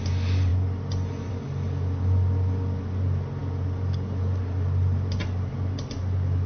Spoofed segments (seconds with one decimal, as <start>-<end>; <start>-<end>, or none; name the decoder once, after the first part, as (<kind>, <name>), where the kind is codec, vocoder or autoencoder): none